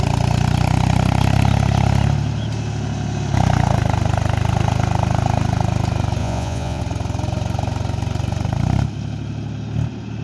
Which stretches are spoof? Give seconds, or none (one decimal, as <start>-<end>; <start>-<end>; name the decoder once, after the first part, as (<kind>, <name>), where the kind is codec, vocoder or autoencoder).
6.2-6.8 (vocoder, Vocos)